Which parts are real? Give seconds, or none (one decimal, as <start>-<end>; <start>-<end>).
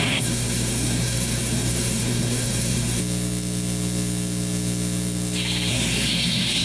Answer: 3.0-5.7